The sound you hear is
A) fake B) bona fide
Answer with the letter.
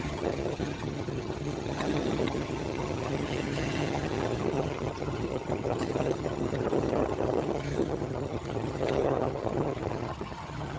A